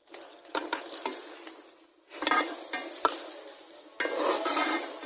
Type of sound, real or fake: real